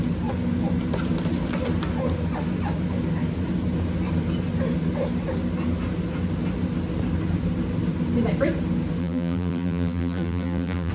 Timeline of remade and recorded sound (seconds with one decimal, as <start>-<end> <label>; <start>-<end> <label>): 0.0-9.0 recorded; 9.0-10.9 remade

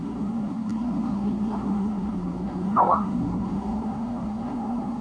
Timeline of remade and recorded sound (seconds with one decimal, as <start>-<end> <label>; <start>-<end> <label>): 0.0-5.0 remade

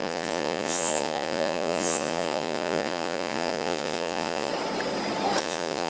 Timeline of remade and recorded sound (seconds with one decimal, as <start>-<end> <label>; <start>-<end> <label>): 0.0-4.5 remade; 4.5-5.4 recorded; 5.4-5.9 remade

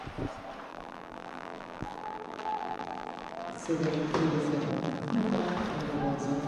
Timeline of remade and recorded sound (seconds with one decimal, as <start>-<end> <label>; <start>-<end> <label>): 0.0-0.7 recorded; 0.7-3.6 remade; 3.6-4.7 recorded; 4.7-5.4 remade; 5.4-6.5 recorded

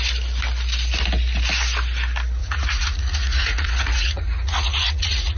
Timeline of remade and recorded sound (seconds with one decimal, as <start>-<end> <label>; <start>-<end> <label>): 0.0-2.4 recorded; 2.4-5.4 remade